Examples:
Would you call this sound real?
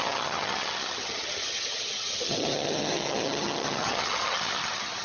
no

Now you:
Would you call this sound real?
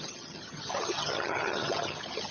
no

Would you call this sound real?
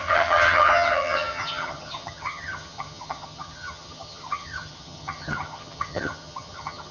no